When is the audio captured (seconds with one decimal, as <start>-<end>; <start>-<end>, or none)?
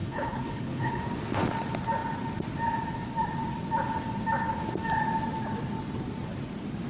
1.0-6.9